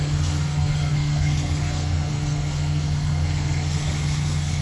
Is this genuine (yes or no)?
no